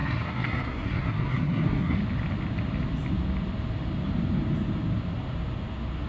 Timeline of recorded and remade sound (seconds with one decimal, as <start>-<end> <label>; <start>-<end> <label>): 0.0-2.0 remade; 2.0-6.1 recorded